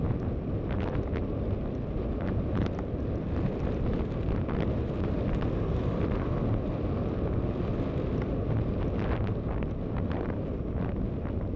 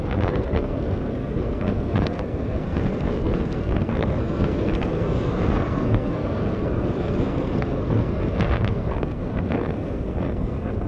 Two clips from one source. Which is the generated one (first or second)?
second